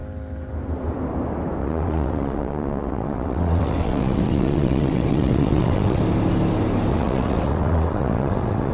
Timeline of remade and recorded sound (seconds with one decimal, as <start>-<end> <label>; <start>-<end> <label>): 0.0-1.6 recorded; 1.6-6.0 remade; 6.0-6.9 recorded; 6.9-8.7 remade

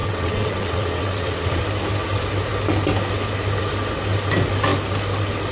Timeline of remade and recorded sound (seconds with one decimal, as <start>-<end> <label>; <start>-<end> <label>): 0.0-1.6 remade; 1.6-5.5 recorded

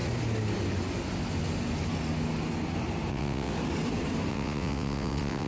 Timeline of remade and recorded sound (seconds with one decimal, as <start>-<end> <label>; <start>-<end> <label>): 0.0-3.1 recorded; 3.1-3.5 remade; 3.5-4.3 recorded; 4.3-5.5 remade

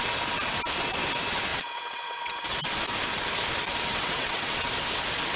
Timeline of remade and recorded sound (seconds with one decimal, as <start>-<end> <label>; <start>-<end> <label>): 0.0-1.5 recorded; 1.5-2.5 remade; 2.5-3.9 recorded; 3.9-4.7 remade; 4.7-5.4 recorded